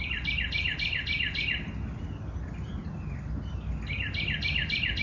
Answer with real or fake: real